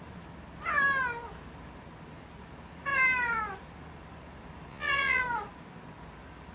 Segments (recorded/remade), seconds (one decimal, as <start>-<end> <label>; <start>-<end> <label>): 0.0-4.7 recorded; 4.7-5.2 remade; 5.2-6.5 recorded

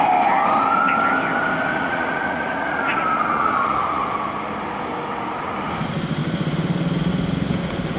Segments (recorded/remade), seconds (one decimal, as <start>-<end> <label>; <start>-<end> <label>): 0.0-1.7 recorded; 1.7-4.1 remade; 4.1-8.0 recorded

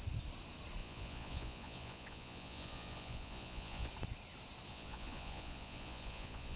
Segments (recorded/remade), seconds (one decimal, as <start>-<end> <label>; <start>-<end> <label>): 0.0-0.8 recorded; 0.8-3.9 remade; 3.9-4.7 recorded; 4.7-6.6 remade